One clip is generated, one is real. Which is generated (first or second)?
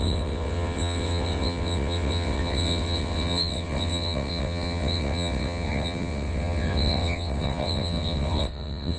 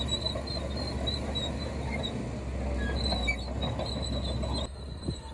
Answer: first